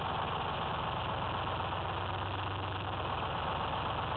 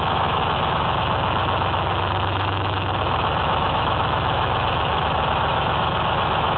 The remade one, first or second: second